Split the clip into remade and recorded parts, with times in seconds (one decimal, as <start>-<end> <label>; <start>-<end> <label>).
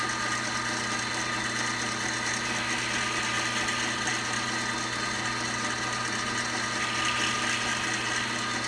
0.0-8.7 recorded